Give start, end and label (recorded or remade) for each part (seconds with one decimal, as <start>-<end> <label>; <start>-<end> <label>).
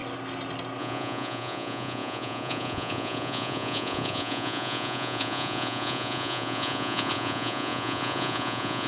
0.0-0.8 recorded; 0.8-8.9 remade